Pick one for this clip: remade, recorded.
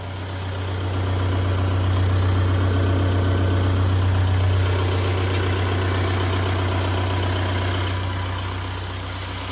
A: recorded